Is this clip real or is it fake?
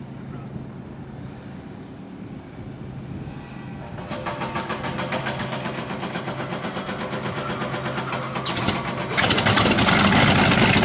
real